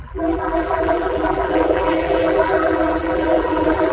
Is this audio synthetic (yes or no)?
yes